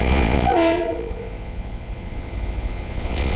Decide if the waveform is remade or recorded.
remade